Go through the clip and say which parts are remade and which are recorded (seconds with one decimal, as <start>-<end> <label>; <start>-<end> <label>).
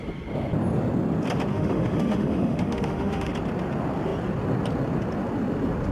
0.0-1.5 recorded; 1.5-3.3 remade; 3.3-5.9 recorded